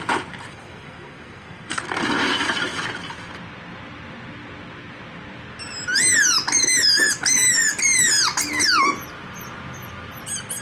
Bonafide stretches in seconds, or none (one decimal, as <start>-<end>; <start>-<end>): 0.0-0.5; 1.8-10.6